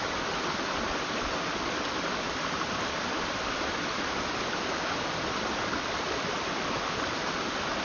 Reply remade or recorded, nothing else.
recorded